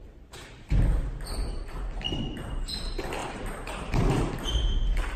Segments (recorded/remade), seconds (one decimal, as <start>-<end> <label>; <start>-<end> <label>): 0.0-0.8 remade; 0.8-3.2 recorded; 3.2-4.3 remade; 4.3-5.2 recorded